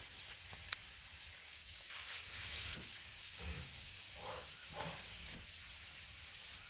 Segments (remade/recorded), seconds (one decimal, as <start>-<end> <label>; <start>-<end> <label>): 0.0-1.4 recorded; 1.4-5.4 remade; 5.4-6.7 recorded